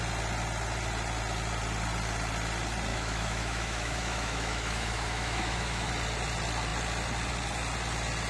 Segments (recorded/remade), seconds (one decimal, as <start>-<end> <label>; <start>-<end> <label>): 0.0-2.9 recorded; 2.9-5.9 remade; 5.9-8.3 recorded